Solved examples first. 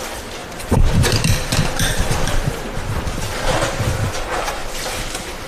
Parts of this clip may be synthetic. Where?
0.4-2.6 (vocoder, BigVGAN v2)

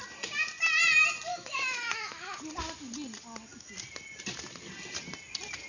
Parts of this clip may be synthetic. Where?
1.3-2.4 (autoencoder, DAC-VAE)